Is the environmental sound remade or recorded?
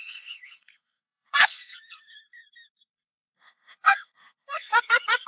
remade